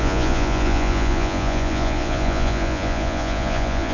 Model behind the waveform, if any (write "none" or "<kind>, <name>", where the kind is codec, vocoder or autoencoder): vocoder, Vocos